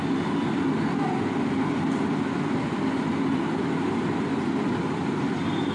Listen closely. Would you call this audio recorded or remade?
recorded